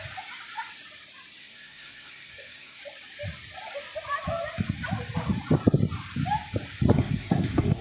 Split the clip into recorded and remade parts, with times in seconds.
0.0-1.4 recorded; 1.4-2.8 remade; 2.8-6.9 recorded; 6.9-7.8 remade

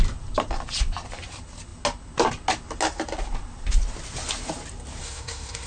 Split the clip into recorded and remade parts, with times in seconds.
0.0-5.0 recorded; 5.0-5.7 remade

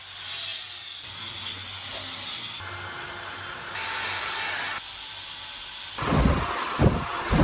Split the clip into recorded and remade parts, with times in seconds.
0.0-7.4 recorded

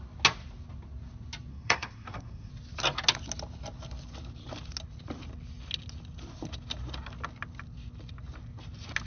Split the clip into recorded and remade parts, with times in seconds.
0.0-1.5 recorded; 1.5-2.5 remade; 2.5-9.1 recorded

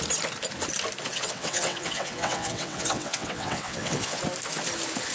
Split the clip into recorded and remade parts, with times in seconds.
0.0-1.1 recorded; 1.1-4.2 remade; 4.2-5.1 recorded

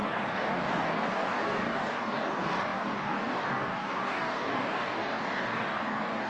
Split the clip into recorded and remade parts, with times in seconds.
0.0-6.3 remade